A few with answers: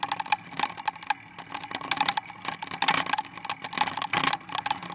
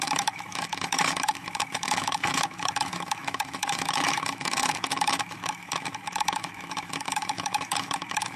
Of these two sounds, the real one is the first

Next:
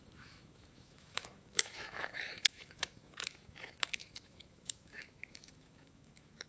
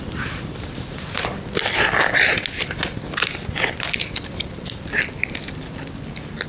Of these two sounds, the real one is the second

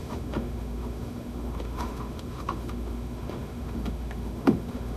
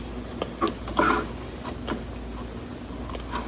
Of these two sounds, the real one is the second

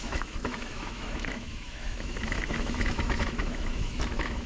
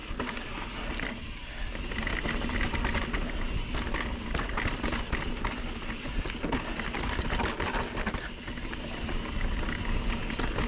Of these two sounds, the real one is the second